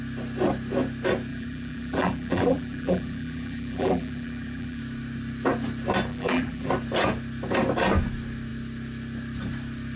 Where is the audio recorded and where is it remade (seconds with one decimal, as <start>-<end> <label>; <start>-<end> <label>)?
0.0-1.3 recorded; 1.3-4.8 remade; 4.8-6.1 recorded; 6.1-6.7 remade; 6.7-10.0 recorded

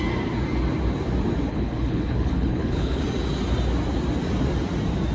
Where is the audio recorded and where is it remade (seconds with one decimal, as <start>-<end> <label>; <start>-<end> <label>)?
0.0-1.5 recorded; 1.5-3.0 remade; 3.0-5.1 recorded